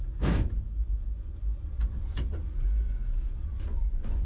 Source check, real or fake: fake